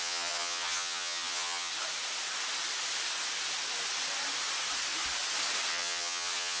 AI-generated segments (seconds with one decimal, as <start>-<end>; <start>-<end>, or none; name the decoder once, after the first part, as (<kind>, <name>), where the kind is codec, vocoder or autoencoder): 0.0-1.7 (vocoder, HiFi-GAN); 5.7-6.6